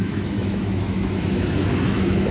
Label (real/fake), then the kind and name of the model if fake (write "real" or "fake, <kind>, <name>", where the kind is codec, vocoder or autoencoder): fake, autoencoder, DAC-VAE